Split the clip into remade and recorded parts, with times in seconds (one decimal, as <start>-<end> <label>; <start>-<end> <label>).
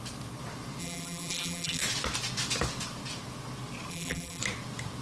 0.0-0.8 recorded; 0.8-1.8 remade; 1.8-3.9 recorded; 3.9-4.4 remade; 4.4-5.0 recorded